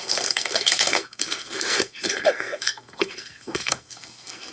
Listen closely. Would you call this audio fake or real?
fake